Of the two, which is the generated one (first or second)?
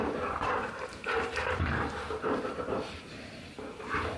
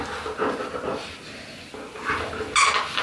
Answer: first